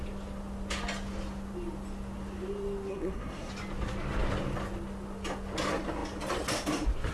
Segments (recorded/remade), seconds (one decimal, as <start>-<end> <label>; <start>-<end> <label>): 0.0-2.9 recorded; 2.9-3.5 remade; 3.5-7.1 recorded